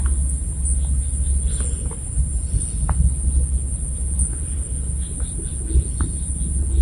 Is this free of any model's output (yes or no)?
yes